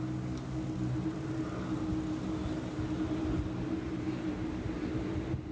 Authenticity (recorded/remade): recorded